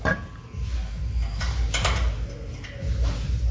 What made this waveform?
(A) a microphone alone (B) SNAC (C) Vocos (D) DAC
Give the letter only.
A